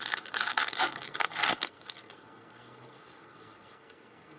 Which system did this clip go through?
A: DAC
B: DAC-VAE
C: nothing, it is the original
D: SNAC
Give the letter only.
D